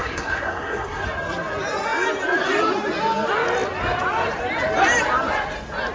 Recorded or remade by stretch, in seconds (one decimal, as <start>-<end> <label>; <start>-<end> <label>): 0.0-1.0 remade; 1.0-5.9 recorded